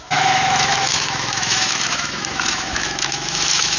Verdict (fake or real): fake